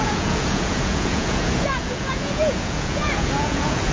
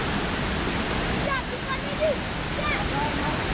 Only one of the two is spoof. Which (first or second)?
first